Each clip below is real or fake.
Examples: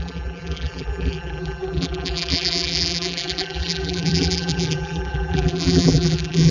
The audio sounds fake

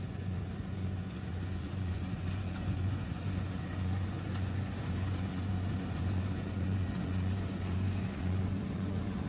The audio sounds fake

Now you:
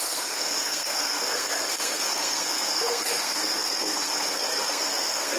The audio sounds fake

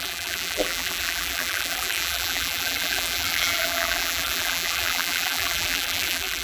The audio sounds fake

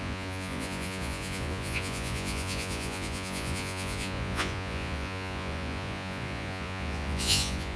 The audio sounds fake